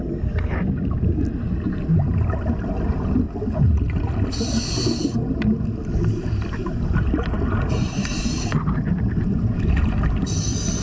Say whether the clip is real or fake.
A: real